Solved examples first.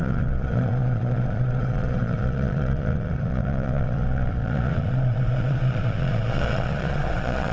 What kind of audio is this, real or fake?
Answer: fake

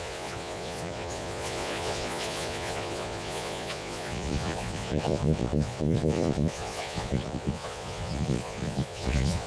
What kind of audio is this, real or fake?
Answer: fake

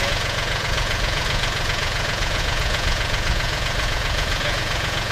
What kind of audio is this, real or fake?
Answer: fake